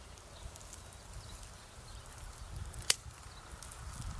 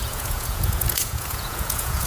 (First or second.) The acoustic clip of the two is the first